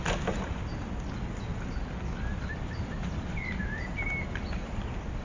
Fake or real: real